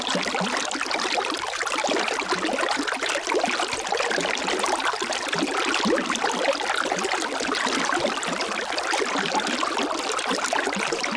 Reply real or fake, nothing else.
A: real